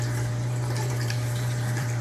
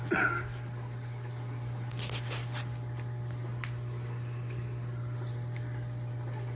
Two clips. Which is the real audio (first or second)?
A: second